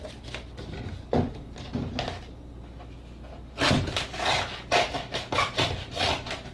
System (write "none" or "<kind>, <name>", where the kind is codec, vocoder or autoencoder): none